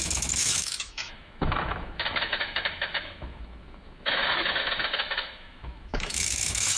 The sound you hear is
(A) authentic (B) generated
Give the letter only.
B